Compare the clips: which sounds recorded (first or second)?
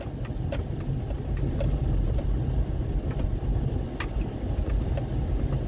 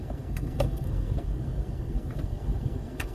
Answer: first